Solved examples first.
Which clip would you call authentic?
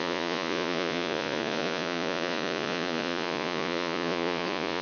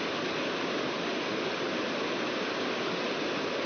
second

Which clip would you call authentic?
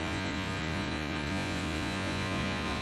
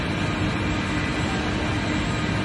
second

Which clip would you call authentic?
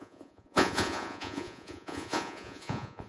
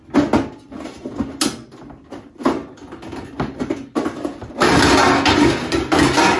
second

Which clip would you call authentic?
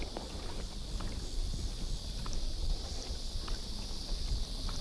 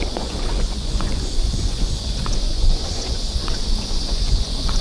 first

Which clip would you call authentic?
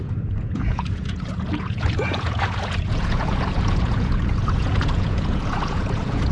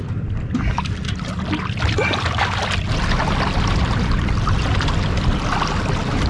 second